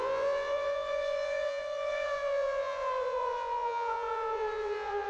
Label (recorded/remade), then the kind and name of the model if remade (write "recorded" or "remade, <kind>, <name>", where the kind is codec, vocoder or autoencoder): remade, vocoder, Vocos